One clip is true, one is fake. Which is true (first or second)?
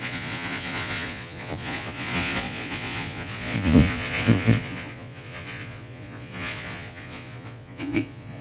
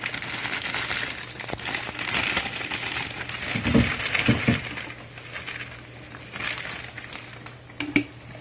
second